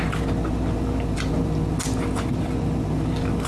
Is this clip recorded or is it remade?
recorded